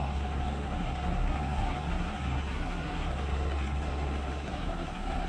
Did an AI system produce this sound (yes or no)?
yes